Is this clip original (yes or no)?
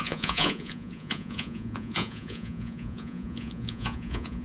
no